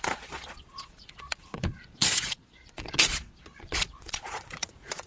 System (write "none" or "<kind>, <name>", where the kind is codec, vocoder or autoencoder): vocoder, Vocos